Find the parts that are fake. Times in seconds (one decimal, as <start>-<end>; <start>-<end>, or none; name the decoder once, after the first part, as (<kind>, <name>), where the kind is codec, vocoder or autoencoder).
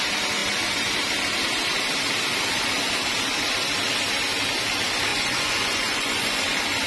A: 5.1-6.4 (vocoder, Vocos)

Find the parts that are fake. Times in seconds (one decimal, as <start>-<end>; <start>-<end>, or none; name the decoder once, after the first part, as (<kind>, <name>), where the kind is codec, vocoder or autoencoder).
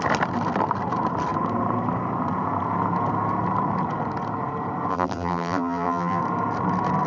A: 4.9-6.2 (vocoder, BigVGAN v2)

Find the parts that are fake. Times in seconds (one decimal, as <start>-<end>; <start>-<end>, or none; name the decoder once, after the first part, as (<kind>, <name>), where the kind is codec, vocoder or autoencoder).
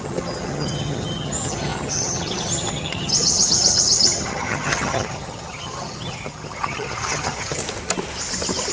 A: 0.0-7.6 (vocoder, HiFi-GAN)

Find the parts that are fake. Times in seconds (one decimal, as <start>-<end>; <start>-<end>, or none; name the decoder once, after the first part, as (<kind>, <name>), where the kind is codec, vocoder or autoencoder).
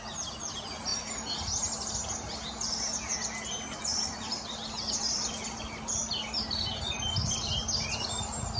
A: 3.9-6.4 (vocoder, BigVGAN v2)